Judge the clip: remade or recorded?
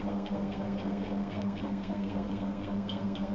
remade